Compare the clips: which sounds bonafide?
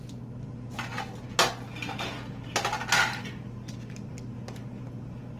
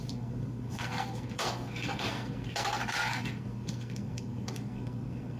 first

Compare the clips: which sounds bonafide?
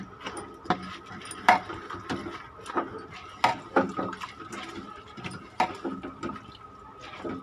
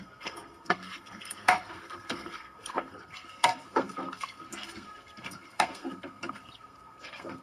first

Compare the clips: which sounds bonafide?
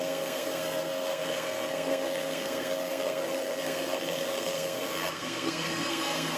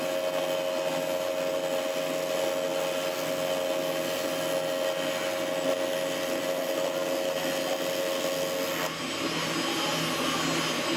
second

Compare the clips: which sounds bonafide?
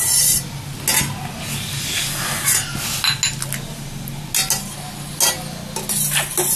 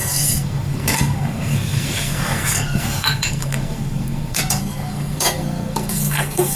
first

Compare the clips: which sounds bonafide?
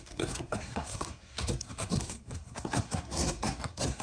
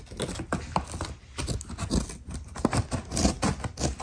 second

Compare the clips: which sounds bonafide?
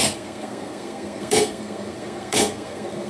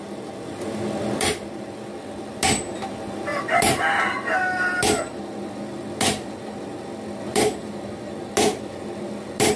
second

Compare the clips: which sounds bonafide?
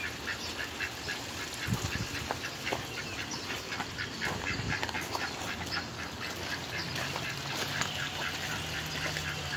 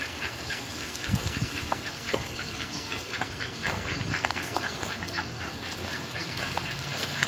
first